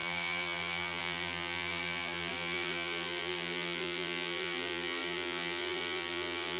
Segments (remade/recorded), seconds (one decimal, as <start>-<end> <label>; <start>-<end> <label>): 0.0-6.6 remade